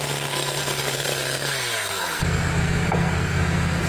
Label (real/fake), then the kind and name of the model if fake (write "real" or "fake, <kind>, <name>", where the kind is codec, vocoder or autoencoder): fake, codec, SNAC